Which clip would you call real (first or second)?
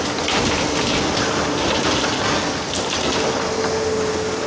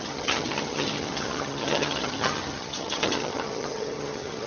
first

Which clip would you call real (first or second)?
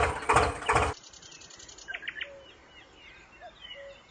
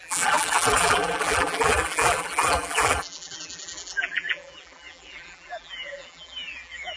first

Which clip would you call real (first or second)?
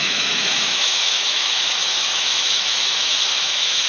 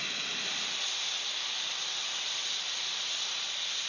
second